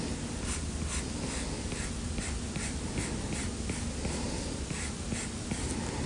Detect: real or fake real